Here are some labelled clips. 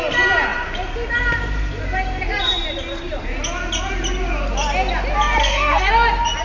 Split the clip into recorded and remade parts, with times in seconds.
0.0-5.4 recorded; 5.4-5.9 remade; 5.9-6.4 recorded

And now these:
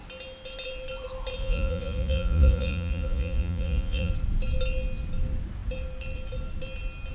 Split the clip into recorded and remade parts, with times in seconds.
0.0-1.4 recorded; 1.4-4.1 remade; 4.1-7.1 recorded